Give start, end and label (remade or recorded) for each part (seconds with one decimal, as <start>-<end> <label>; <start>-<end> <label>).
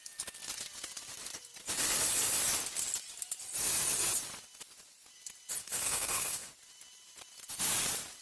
0.0-5.6 recorded; 5.6-6.5 remade; 6.5-8.2 recorded